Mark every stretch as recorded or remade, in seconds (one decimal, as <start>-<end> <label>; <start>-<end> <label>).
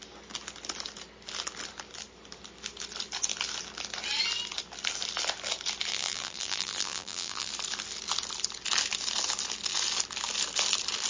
0.0-5.9 recorded; 5.9-7.5 remade; 7.5-11.1 recorded